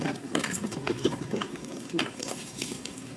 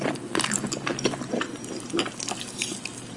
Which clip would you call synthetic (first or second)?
first